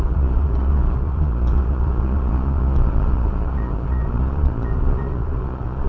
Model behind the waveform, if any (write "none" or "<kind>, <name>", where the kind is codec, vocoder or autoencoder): vocoder, Vocos